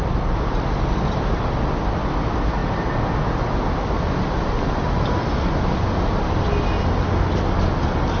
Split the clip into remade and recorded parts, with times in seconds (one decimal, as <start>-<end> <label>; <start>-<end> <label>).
0.0-8.2 recorded